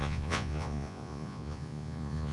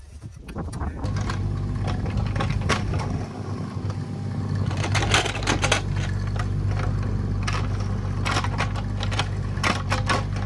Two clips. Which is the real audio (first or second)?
second